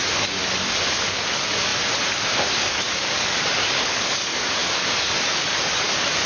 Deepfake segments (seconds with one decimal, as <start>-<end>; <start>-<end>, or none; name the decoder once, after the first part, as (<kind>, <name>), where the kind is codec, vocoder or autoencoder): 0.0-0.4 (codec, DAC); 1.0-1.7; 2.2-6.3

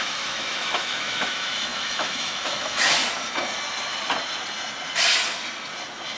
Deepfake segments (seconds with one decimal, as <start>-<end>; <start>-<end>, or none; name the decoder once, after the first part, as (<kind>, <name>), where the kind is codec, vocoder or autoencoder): 0.0-3.0 (autoencoder, DAC-VAE)

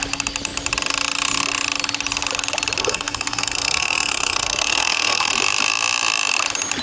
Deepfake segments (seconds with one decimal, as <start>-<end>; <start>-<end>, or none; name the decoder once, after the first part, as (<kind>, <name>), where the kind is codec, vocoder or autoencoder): 2.8-5.3 (codec, SNAC)

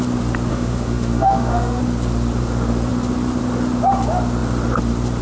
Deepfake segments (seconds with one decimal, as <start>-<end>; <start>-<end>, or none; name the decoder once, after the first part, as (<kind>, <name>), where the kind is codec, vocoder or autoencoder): 0.5-1.8 (autoencoder, DAC-VAE)